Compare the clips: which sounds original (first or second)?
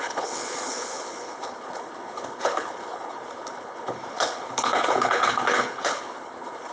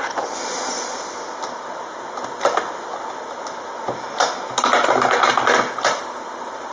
second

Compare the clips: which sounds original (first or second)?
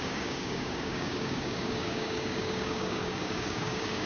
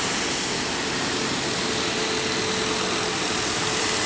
second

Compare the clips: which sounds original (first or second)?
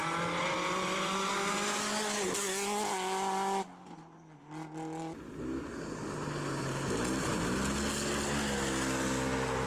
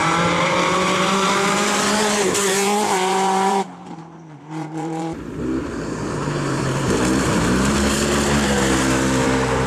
first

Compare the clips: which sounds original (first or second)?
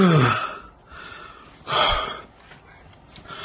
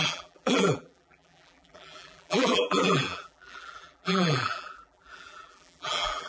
first